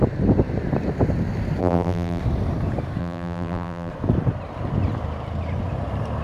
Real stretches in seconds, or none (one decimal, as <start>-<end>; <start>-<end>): 0.0-1.6; 2.2-3.0; 3.9-6.2

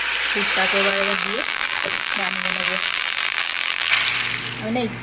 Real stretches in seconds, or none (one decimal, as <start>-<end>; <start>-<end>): 0.0-0.9; 3.9-5.0

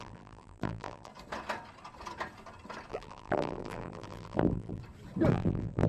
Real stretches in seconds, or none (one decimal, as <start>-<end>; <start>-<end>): 1.1-2.9; 4.8-5.3

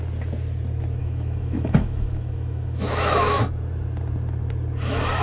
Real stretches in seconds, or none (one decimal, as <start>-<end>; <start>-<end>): 0.0-1.0; 3.4-5.2

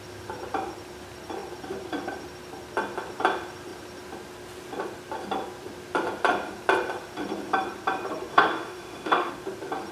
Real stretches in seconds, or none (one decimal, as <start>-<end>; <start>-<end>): 0.0-8.3; 9.3-9.9

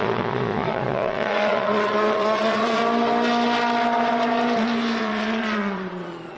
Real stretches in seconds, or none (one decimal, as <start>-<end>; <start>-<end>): 2.8-5.0

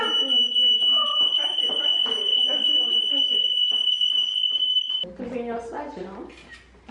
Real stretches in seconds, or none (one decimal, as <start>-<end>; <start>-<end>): 0.0-1.1; 1.6-2.3; 3.9-4.4; 5.0-6.9

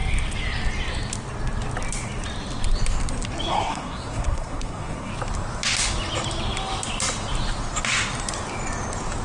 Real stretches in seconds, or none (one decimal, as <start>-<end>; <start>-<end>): 0.0-3.5; 5.1-9.2